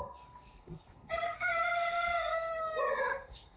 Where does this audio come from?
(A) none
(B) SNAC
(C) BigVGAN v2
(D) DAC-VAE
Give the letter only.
B